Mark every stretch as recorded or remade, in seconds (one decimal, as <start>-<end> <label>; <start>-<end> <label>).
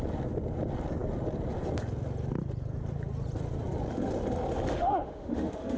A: 0.0-4.7 recorded; 4.7-5.8 remade